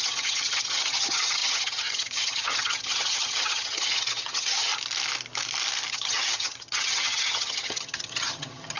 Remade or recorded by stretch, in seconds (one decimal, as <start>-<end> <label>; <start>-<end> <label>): 0.0-4.7 remade; 4.7-5.9 recorded; 5.9-8.8 remade

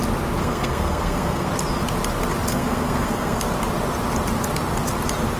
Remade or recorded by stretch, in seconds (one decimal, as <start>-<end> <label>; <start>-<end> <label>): 0.0-0.4 recorded; 0.4-1.5 remade; 1.5-2.5 recorded; 2.5-3.4 remade; 3.4-5.4 recorded

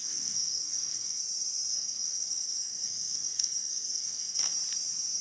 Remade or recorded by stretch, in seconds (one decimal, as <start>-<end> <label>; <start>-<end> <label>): 0.0-1.2 remade; 1.2-1.7 recorded; 1.7-4.5 remade; 4.5-5.2 recorded

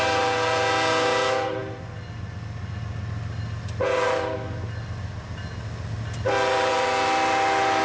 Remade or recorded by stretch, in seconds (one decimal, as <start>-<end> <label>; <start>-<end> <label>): 0.0-7.8 recorded

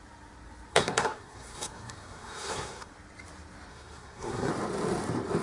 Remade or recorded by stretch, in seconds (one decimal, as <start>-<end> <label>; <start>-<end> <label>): 0.0-0.7 recorded; 0.7-2.9 remade; 2.9-3.7 recorded; 3.7-4.5 remade; 4.5-5.4 recorded

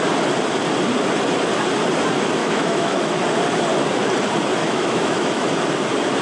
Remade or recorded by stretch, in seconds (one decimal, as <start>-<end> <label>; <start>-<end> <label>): 0.0-2.4 recorded; 2.4-3.2 remade; 3.2-4.6 recorded; 4.6-5.5 remade; 5.5-6.2 recorded